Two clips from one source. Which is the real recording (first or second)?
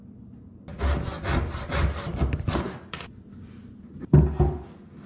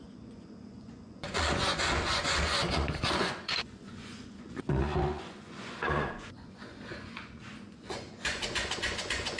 first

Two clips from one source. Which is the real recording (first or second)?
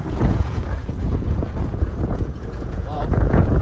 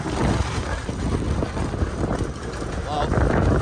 second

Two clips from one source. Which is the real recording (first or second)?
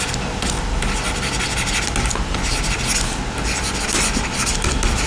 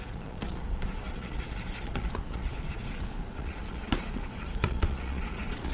first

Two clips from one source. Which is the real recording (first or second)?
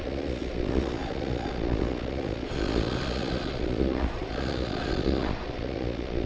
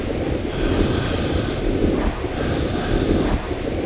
second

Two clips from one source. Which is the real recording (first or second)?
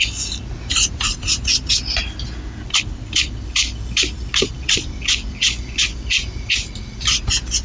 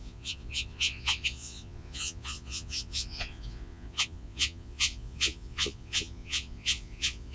first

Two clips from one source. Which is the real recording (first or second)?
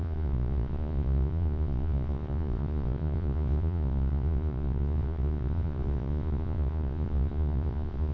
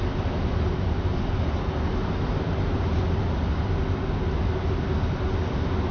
second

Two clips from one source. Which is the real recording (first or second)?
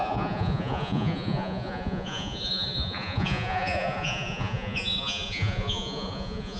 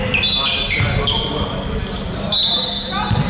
second